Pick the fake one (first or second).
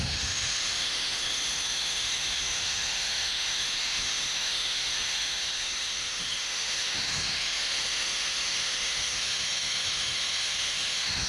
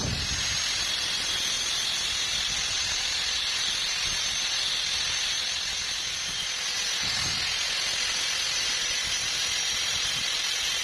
first